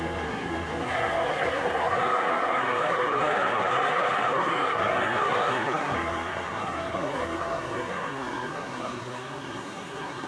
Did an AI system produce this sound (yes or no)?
yes